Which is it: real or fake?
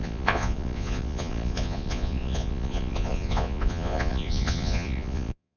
fake